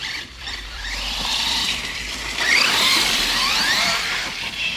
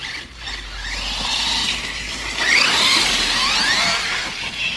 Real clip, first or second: second